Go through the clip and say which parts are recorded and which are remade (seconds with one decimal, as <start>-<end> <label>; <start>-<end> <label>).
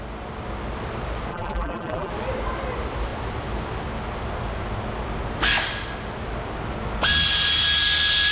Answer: 0.0-1.3 recorded; 1.3-2.1 remade; 2.1-8.3 recorded